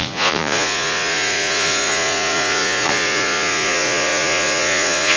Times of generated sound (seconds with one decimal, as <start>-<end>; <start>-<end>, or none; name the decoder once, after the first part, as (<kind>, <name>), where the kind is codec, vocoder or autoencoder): 0.0-5.2 (vocoder, Vocos)